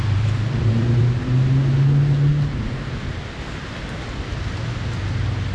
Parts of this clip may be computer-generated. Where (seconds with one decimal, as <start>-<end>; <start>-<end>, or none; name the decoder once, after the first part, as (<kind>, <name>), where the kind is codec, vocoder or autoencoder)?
0.0-1.0 (vocoder, BigVGAN v2); 2.3-3.3